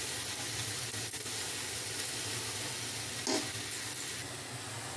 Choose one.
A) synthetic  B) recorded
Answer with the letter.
B